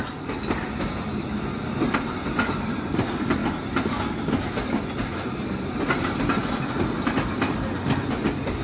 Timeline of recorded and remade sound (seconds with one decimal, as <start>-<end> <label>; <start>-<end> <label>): 0.0-1.5 remade; 1.5-2.1 recorded; 2.1-3.4 remade; 3.4-7.3 recorded; 7.3-8.6 remade